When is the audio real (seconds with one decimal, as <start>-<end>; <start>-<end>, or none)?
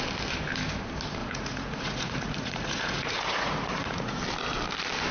0.0-1.2; 4.2-5.1